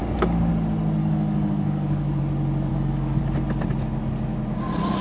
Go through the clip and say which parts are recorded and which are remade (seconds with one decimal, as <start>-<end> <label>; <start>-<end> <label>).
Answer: 0.0-1.0 recorded; 1.0-2.2 remade; 2.2-2.7 recorded; 2.7-3.2 remade; 3.2-5.0 recorded